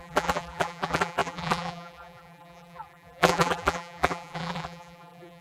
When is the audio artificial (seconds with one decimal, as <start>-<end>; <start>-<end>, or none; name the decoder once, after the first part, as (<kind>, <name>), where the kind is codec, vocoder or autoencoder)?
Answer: 0.0-5.4 (vocoder, BigVGAN v2)